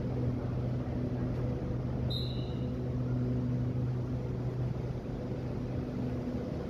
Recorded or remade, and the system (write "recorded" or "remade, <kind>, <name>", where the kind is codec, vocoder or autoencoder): recorded